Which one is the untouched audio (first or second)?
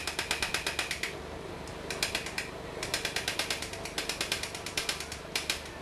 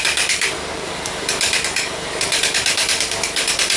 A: first